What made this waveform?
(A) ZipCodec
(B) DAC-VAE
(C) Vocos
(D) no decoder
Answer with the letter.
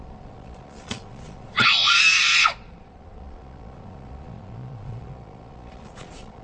C